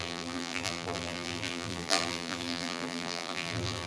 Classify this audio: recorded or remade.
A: remade